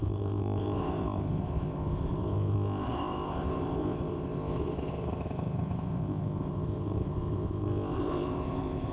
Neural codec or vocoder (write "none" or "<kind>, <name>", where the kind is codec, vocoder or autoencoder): codec, ZipCodec